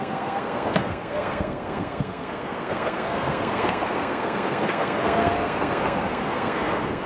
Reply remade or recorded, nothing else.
remade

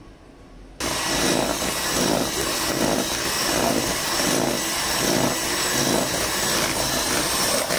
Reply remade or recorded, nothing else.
recorded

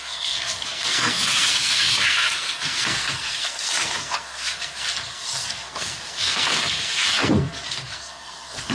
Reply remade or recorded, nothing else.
remade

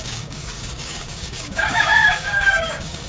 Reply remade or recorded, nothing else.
remade